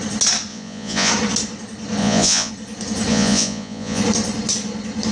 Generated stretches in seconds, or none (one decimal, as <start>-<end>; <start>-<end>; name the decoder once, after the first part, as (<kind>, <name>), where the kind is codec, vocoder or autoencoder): 0.5-1.1 (vocoder, Vocos); 2.0-2.5; 3.1-4.0